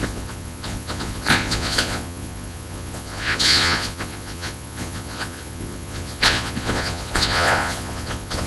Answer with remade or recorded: remade